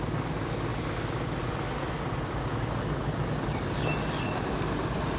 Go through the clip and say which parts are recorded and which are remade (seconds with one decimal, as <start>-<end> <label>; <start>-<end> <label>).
0.0-5.2 recorded

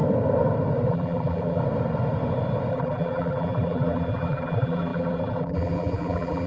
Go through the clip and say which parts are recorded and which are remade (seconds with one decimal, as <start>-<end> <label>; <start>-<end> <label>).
0.0-0.9 recorded; 0.9-1.6 remade; 1.6-2.7 recorded; 2.7-6.5 remade

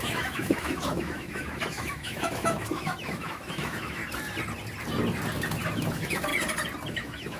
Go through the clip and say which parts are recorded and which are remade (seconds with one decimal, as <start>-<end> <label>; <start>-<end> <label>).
0.0-4.0 remade; 4.0-5.7 recorded; 5.7-6.3 remade; 6.3-6.9 recorded; 6.9-7.4 remade

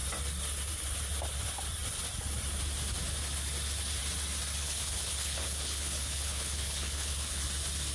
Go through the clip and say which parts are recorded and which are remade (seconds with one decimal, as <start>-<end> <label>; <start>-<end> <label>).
0.0-4.6 recorded; 4.6-7.4 remade; 7.4-7.9 recorded

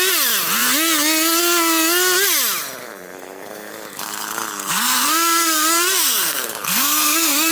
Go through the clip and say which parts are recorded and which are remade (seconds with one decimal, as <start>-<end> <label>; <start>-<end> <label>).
0.0-2.8 recorded; 2.8-7.5 remade

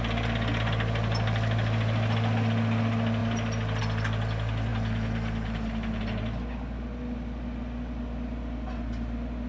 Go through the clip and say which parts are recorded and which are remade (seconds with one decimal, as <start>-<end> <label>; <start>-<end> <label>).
0.0-9.5 recorded